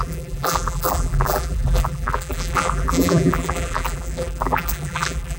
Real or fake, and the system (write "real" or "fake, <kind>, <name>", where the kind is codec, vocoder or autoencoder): fake, vocoder, BigVGAN v2